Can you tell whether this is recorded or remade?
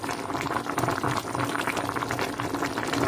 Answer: recorded